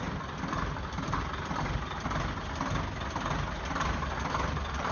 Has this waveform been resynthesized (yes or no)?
no